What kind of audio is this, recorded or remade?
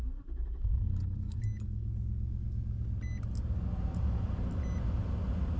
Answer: recorded